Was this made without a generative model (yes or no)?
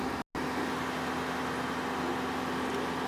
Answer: yes